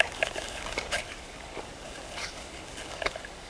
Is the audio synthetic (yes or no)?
yes